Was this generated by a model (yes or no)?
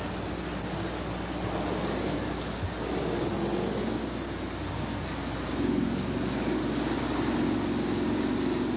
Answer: no